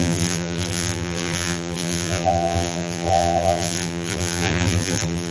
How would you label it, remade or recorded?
remade